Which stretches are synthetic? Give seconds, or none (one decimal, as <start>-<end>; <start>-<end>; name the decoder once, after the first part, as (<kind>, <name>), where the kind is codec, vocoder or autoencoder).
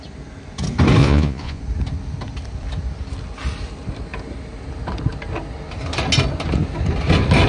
1.0-1.6 (vocoder, Vocos)